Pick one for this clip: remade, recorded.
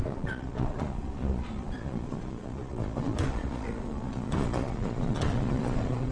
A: remade